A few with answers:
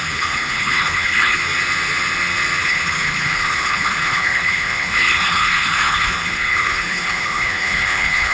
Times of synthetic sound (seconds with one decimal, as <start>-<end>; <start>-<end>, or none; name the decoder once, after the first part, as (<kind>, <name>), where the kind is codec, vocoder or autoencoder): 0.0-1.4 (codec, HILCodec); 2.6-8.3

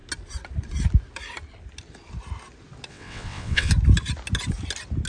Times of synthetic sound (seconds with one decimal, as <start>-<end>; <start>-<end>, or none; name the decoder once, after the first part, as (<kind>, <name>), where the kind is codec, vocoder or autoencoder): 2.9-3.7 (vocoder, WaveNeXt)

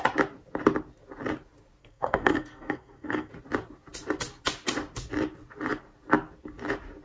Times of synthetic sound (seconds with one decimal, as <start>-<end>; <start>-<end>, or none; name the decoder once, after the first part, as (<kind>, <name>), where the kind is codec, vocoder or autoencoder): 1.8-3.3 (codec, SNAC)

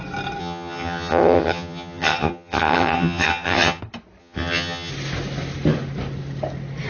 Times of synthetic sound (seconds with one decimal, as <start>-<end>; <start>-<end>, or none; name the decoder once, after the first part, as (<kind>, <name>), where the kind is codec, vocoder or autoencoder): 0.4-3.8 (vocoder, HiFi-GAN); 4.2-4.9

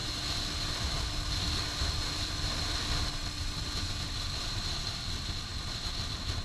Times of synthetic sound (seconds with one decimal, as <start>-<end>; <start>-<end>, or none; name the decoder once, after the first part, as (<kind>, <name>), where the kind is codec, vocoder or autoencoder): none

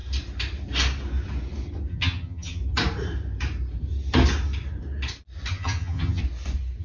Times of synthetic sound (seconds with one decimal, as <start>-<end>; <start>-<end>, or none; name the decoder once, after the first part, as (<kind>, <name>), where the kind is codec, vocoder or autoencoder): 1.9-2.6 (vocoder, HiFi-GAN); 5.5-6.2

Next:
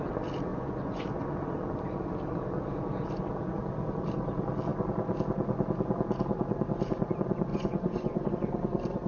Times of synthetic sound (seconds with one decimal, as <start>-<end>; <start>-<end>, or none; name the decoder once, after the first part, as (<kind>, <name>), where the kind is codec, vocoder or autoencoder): 0.5-1.3 (vocoder, Vocos); 7.5-8.3